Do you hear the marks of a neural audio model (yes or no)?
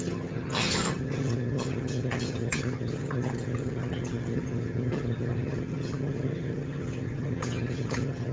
yes